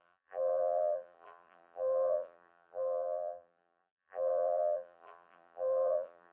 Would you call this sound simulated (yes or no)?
yes